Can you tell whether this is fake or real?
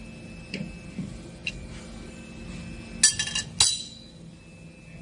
real